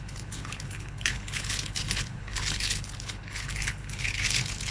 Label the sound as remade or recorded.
remade